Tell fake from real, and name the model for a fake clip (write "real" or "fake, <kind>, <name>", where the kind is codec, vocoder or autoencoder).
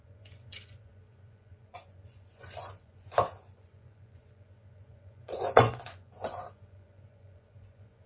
fake, vocoder, Vocos